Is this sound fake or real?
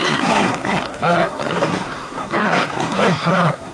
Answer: fake